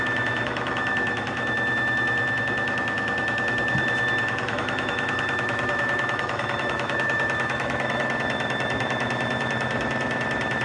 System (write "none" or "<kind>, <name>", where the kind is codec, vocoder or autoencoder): autoencoder, DAC-VAE